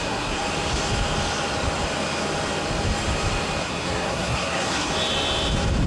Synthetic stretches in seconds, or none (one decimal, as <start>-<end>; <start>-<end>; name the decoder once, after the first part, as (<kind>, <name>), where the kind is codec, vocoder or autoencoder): 0.0-0.4 (codec, SNAC); 3.6-4.9